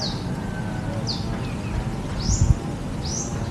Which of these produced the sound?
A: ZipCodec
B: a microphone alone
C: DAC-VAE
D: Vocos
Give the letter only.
B